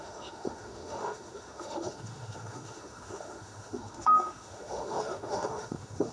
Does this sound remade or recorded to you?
remade